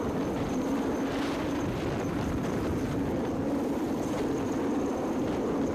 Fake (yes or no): no